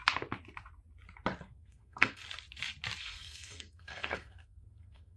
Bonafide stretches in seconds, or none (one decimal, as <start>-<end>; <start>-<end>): 0.0-1.4; 2.2-3.0